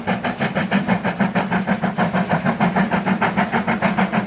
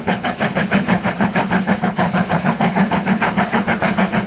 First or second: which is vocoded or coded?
second